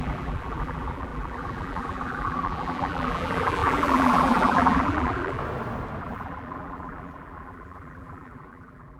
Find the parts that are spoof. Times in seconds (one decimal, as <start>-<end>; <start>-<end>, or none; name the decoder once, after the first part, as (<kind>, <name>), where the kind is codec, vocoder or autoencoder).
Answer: 0.0-5.4 (vocoder, BigVGAN v2); 6.0-9.0